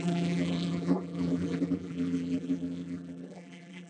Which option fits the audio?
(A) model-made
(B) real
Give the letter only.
A